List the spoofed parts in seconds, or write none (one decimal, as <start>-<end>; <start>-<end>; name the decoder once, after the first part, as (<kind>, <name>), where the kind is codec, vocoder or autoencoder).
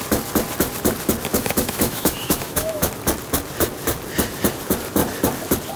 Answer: 1.3-2.9 (autoencoder, DAC-VAE)